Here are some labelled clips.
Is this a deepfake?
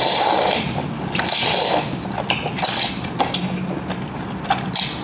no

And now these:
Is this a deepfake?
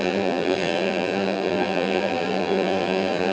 yes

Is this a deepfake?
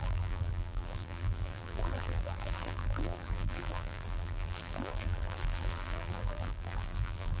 yes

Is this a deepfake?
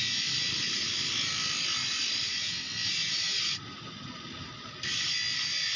no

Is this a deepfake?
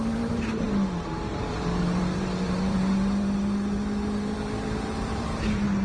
yes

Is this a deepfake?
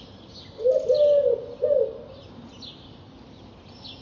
no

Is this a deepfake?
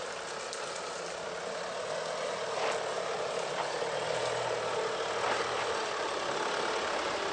no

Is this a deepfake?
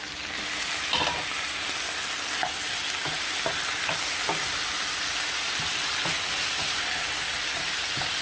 no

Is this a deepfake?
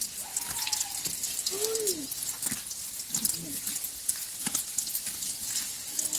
no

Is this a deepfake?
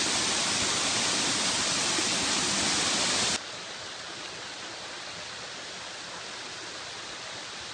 no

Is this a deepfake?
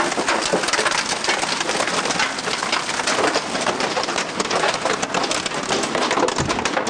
no